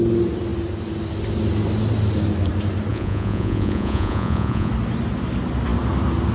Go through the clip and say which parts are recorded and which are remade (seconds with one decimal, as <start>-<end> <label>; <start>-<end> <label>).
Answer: 0.0-2.9 recorded; 2.9-4.7 remade; 4.7-6.3 recorded